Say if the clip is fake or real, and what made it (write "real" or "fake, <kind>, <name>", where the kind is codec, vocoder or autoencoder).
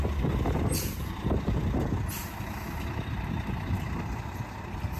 real